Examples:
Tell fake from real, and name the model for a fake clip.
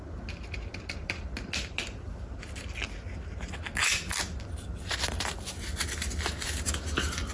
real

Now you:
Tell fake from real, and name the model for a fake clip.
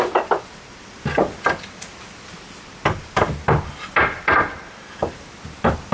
fake, vocoder, BigVGAN v2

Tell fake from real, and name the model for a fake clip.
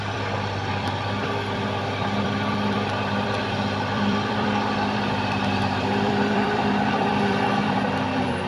fake, vocoder, BigVGAN v2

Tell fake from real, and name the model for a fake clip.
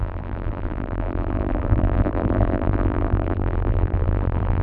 fake, vocoder, BigVGAN v2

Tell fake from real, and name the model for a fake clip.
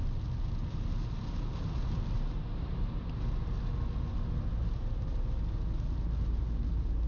real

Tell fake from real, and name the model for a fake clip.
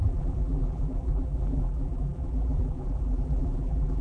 fake, vocoder, BigVGAN v2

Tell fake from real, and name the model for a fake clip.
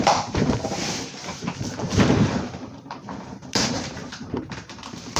fake, vocoder, BigVGAN v2